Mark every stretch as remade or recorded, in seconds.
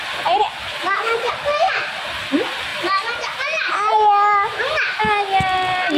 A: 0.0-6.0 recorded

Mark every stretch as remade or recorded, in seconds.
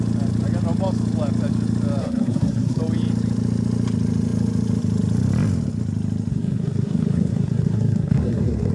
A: 0.0-2.0 recorded; 2.0-2.8 remade; 2.8-6.3 recorded; 6.3-8.7 remade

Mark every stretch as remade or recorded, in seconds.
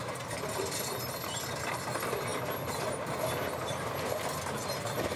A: 0.0-5.2 recorded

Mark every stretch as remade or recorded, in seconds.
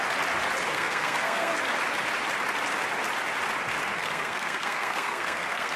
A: 0.0-0.7 recorded; 0.7-1.5 remade; 1.5-4.0 recorded; 4.0-5.8 remade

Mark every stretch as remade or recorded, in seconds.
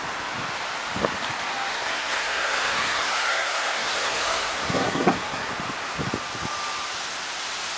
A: 0.0-1.7 recorded; 1.7-5.5 remade; 5.5-7.8 recorded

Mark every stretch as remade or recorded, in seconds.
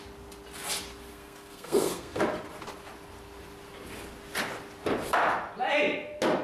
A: 0.0-1.1 recorded; 1.1-2.2 remade; 2.2-6.4 recorded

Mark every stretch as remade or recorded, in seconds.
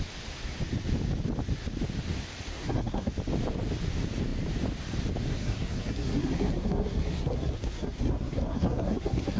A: 0.0-2.5 recorded; 2.5-3.1 remade; 3.1-5.3 recorded; 5.3-9.4 remade